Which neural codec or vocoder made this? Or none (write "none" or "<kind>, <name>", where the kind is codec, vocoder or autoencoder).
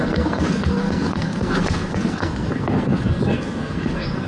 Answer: codec, SNAC